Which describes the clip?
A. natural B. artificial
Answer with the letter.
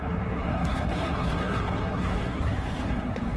B